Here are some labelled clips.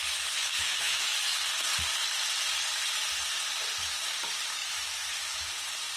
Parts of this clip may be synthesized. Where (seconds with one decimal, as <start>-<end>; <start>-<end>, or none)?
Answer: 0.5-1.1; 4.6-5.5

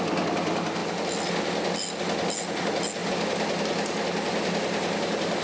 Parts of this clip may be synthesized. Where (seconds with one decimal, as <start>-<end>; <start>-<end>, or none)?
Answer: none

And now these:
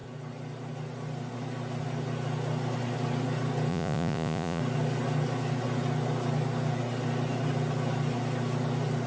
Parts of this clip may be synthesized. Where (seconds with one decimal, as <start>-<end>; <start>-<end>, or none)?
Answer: 3.7-4.6

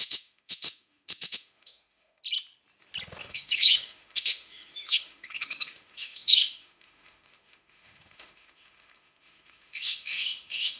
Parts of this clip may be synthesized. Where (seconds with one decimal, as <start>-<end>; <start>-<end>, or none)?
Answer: 0.0-2.2; 3.2-10.8